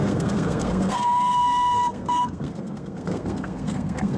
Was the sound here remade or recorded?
remade